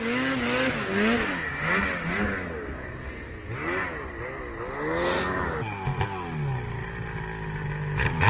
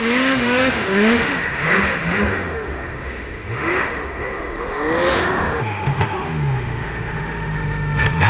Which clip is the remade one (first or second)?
second